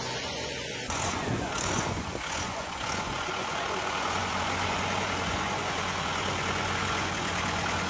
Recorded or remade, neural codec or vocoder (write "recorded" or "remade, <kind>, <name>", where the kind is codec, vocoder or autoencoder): remade, vocoder, Vocos